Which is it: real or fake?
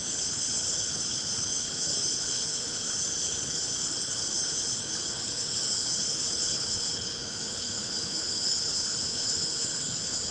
fake